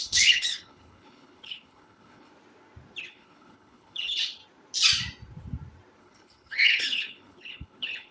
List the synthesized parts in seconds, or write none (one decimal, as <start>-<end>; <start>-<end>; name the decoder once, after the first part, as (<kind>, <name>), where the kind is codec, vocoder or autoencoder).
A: 0.0-2.3 (codec, HILCodec); 3.0-4.4; 6.0-8.1